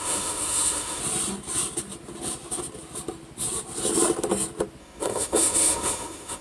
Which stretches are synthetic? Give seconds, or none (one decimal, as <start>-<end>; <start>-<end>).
0.0-1.0; 4.8-6.4